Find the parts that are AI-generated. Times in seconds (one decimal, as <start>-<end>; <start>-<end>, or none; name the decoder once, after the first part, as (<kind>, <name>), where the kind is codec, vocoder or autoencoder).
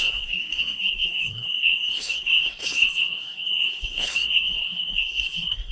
0.0-5.7 (codec, SNAC)